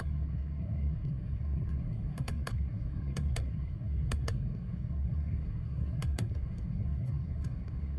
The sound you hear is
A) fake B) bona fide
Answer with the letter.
A